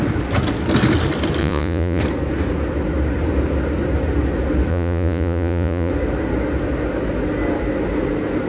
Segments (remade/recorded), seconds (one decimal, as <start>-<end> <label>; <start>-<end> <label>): 0.0-1.4 recorded; 1.4-2.0 remade; 2.0-4.7 recorded; 4.7-5.9 remade; 5.9-8.5 recorded